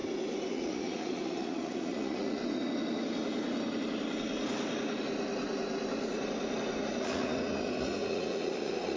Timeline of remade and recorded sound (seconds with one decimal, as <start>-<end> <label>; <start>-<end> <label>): 0.0-0.5 recorded; 0.5-2.4 remade; 2.4-6.8 recorded; 6.8-9.0 remade